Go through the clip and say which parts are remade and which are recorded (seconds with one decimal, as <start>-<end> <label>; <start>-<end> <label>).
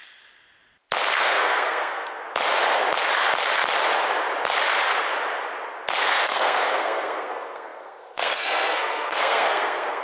0.0-1.2 recorded; 1.2-2.2 remade; 2.2-6.0 recorded; 6.0-10.0 remade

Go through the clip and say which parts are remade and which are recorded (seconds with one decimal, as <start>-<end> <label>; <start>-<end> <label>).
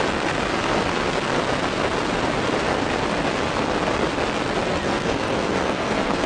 0.0-4.7 recorded; 4.7-6.3 remade